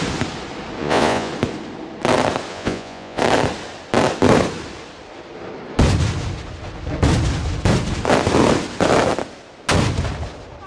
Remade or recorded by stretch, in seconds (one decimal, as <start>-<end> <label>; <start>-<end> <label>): 0.0-0.8 recorded; 0.8-1.3 remade; 1.3-2.5 recorded; 2.5-3.2 remade; 3.2-10.7 recorded

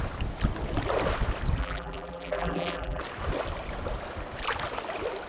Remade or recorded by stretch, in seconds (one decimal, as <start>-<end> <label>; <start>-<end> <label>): 0.0-1.6 recorded; 1.6-3.0 remade; 3.0-5.3 recorded

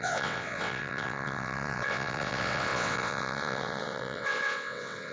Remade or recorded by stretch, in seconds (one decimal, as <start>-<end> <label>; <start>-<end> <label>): 0.0-5.1 remade

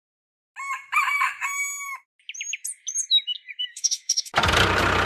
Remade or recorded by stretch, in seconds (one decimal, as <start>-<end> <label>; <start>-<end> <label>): 0.0-3.7 recorded; 3.7-4.3 remade; 4.3-5.1 recorded

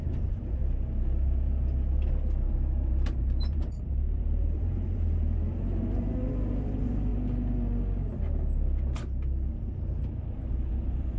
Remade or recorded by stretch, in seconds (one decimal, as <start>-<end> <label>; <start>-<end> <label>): 0.0-0.6 remade; 0.6-2.9 recorded; 2.9-7.1 remade; 7.1-10.3 recorded; 10.3-11.2 remade

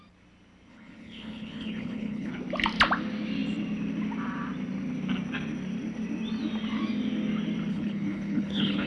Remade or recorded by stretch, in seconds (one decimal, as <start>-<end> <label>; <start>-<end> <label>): 0.0-0.7 recorded; 0.7-2.3 remade; 2.3-7.7 recorded; 7.7-8.9 remade